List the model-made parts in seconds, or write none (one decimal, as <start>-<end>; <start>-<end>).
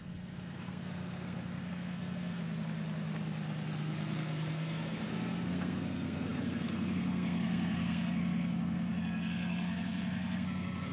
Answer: 0.0-2.4; 3.8-10.9